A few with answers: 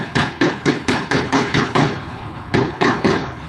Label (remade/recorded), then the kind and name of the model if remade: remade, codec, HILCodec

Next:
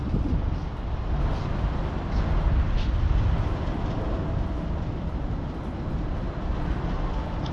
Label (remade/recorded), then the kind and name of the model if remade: recorded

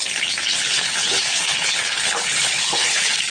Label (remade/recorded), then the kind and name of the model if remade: remade, codec, HILCodec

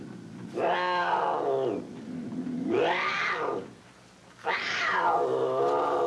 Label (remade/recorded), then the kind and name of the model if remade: recorded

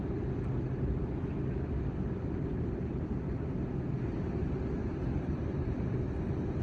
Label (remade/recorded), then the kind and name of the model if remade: recorded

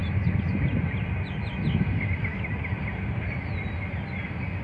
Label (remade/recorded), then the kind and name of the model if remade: recorded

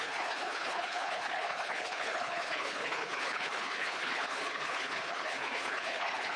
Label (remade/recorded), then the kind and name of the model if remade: remade, codec, HILCodec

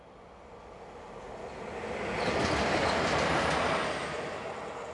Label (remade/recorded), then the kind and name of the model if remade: recorded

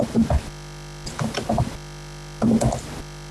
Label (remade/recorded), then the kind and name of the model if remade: recorded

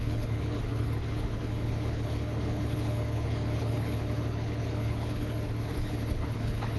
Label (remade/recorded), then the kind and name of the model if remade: remade, codec, HILCodec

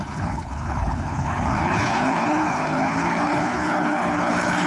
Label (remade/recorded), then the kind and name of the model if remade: remade, codec, HILCodec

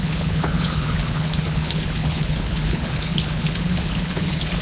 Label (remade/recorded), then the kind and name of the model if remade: remade, codec, HILCodec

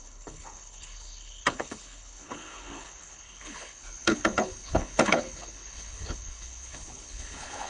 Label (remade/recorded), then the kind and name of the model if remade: remade, codec, HILCodec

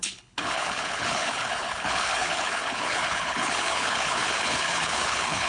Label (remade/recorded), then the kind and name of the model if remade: remade, codec, HILCodec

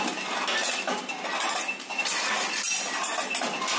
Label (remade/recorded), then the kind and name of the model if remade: recorded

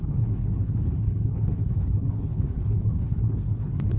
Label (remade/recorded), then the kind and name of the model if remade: remade, codec, HILCodec